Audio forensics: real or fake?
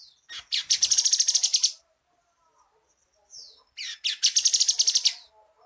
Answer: real